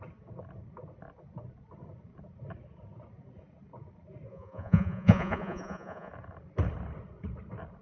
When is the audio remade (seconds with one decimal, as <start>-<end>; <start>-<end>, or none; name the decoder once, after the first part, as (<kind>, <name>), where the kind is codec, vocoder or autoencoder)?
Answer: 4.3-6.1 (vocoder, Vocos)